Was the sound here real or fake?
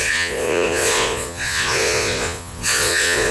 fake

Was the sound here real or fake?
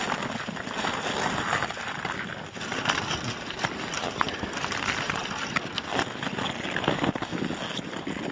real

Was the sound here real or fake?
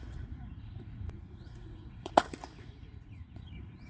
fake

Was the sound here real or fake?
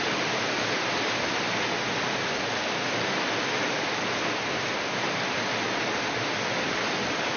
real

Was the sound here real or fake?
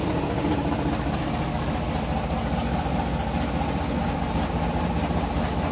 real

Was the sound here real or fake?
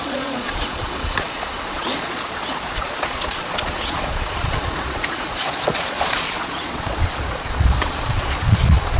fake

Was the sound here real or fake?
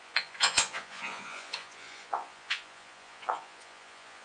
fake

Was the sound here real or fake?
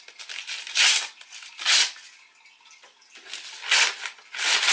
real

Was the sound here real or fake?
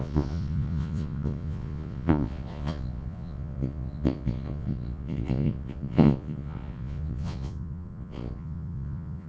fake